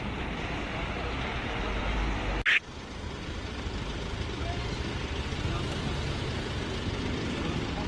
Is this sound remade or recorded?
recorded